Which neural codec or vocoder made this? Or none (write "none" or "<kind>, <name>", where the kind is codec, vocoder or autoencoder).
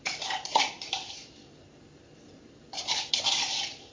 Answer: vocoder, BigVGAN v2